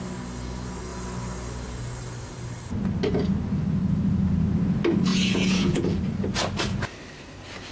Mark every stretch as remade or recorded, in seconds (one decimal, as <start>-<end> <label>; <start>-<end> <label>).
0.0-5.1 recorded; 5.1-6.0 remade; 6.0-7.7 recorded